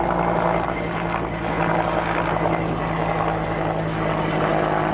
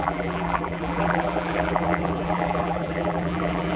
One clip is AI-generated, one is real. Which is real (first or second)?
first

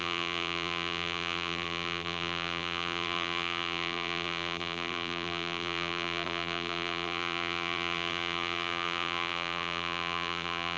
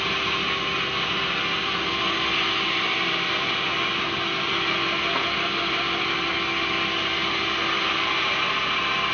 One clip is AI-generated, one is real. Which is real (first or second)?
second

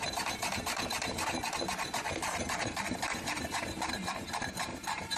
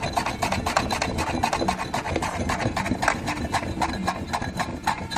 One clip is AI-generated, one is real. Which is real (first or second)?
second